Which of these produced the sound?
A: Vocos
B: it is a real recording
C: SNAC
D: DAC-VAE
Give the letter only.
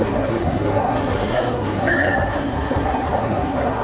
C